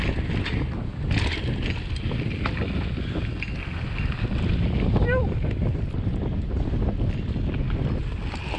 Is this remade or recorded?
recorded